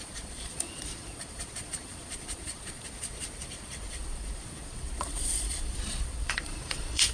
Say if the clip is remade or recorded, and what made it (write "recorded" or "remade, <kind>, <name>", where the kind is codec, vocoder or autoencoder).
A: remade, vocoder, Vocos